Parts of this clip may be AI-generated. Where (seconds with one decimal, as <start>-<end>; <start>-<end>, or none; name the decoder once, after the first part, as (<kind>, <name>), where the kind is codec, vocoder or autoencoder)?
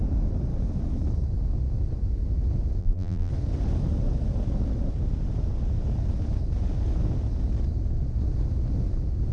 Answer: 2.8-3.3 (vocoder, BigVGAN v2)